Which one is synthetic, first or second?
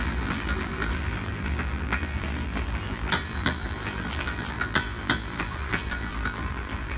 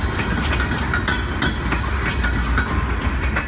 first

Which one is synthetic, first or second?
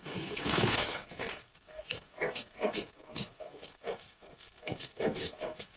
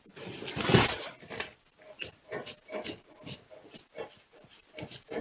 first